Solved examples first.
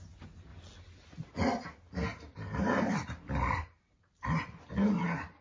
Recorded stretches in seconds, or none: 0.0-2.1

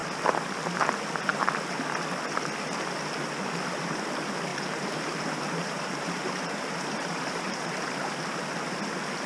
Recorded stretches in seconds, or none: 0.0-4.5; 8.1-9.3